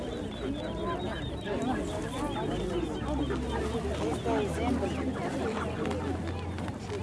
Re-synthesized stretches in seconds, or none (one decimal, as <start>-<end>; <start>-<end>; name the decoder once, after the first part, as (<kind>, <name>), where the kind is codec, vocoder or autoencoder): none